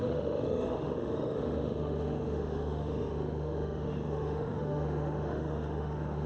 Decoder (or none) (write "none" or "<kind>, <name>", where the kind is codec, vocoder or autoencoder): autoencoder, DAC-VAE